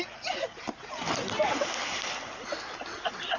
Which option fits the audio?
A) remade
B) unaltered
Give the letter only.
B